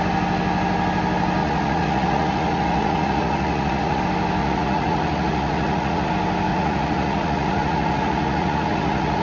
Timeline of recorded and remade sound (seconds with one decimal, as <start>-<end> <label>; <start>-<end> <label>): 0.0-1.4 recorded; 1.4-4.0 remade; 4.0-4.4 recorded; 4.4-6.1 remade; 6.1-6.5 recorded; 6.5-9.2 remade